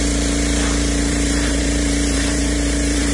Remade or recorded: remade